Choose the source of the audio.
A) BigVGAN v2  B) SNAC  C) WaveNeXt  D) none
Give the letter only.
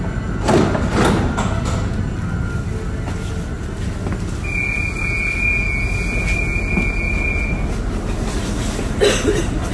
D